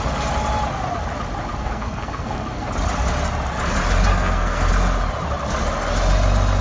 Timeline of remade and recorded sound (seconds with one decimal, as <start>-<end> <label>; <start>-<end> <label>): 0.0-1.6 recorded; 1.6-2.7 remade; 2.7-4.1 recorded; 4.1-4.7 remade; 4.7-6.6 recorded